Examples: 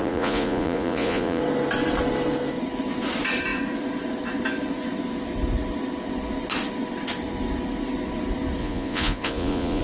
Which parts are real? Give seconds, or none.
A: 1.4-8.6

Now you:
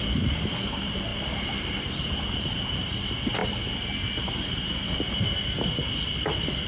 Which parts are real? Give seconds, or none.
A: 0.0-6.7

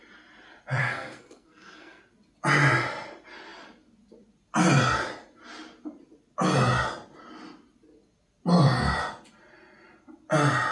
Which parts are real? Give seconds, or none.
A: 0.0-0.8; 2.0-10.7

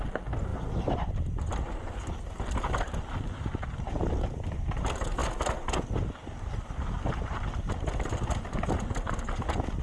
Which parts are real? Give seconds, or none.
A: 0.0-0.5; 4.1-9.8

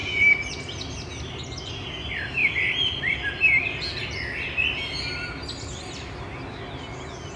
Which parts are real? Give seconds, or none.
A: 0.0-7.4

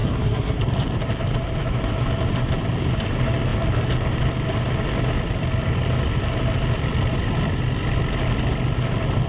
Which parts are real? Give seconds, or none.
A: 0.6-9.3